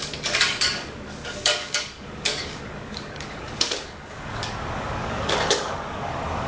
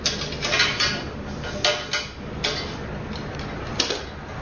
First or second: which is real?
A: second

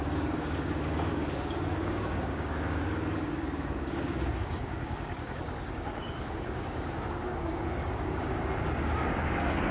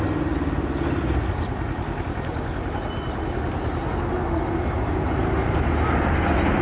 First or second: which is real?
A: second